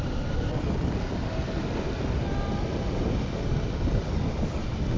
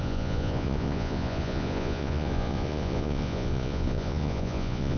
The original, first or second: first